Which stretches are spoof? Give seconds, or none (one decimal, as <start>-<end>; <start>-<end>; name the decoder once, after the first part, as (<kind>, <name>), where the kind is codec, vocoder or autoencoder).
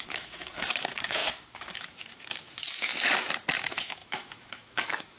0.0-2.9 (autoencoder, DAC-VAE); 3.6-5.2